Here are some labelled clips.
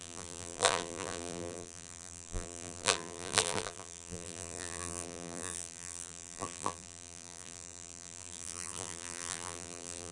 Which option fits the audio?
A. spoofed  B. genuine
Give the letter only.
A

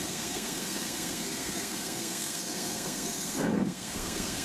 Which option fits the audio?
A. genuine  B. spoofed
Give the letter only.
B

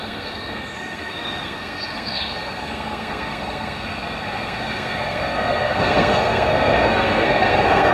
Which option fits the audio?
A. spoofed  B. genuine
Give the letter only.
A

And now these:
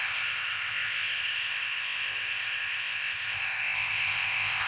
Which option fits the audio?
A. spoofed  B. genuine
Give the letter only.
A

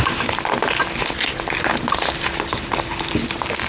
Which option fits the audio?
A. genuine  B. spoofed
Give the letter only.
A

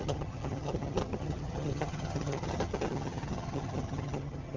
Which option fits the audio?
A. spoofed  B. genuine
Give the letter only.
A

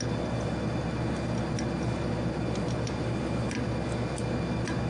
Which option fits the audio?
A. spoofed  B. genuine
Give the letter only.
B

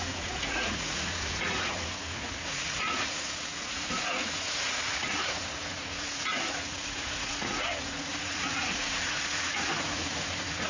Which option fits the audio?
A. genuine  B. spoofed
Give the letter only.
B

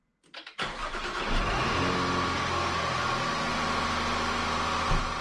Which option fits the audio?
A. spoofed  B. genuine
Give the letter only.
B